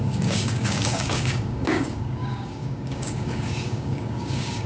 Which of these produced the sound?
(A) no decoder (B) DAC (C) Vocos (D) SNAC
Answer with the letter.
B